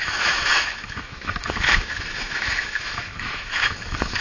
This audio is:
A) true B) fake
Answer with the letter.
B